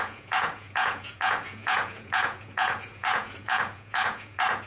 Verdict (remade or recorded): remade